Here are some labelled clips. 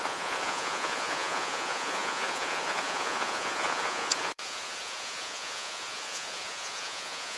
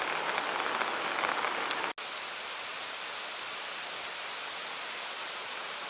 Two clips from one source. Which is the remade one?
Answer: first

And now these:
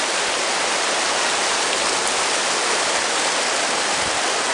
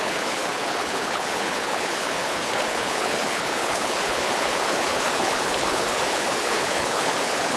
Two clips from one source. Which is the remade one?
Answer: second